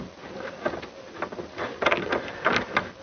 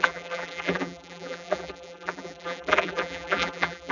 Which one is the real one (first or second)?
first